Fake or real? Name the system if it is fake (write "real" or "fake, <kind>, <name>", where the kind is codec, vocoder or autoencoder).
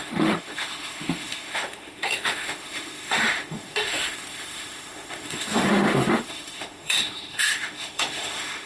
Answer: fake, autoencoder, DAC-VAE